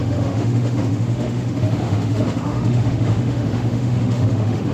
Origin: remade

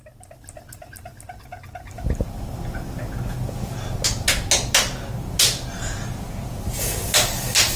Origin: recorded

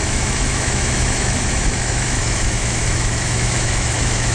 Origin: remade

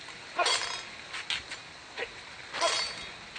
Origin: recorded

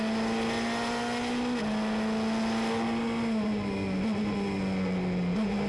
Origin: recorded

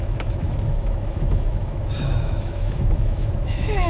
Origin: remade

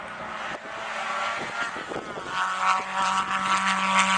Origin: recorded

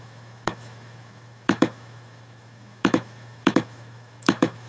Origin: remade